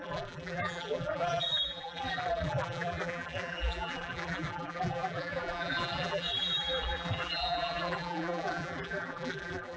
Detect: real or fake fake